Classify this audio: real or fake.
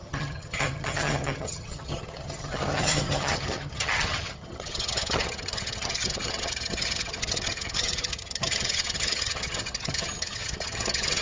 fake